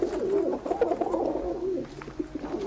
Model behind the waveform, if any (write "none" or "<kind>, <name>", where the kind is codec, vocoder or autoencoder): none